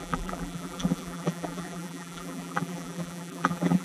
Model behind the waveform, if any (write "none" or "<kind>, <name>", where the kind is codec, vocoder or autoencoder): vocoder, BigVGAN v2